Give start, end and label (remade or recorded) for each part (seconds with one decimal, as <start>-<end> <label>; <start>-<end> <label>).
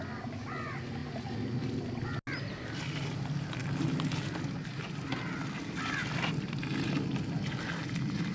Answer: 0.0-1.0 recorded; 1.0-1.9 remade; 1.9-6.0 recorded; 6.0-6.7 remade; 6.7-8.3 recorded